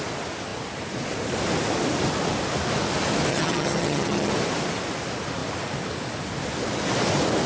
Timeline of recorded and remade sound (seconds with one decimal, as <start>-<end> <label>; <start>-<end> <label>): 0.0-3.3 recorded; 3.3-4.3 remade; 4.3-7.5 recorded